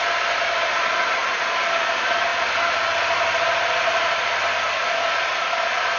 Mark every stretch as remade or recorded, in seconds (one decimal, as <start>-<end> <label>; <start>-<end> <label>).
0.0-1.2 remade; 1.2-1.9 recorded; 1.9-4.8 remade; 4.8-6.0 recorded